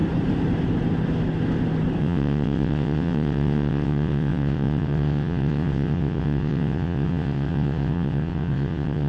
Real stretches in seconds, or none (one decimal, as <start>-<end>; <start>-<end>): 0.0-2.0